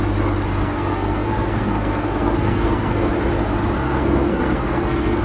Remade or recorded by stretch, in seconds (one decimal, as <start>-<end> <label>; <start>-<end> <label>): 0.0-0.6 recorded; 0.6-3.1 remade; 3.1-3.8 recorded; 3.8-5.2 remade